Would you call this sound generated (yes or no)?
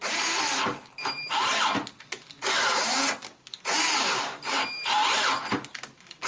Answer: no